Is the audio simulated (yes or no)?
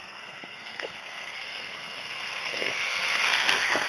yes